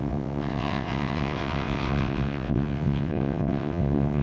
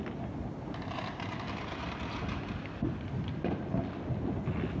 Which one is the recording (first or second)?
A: second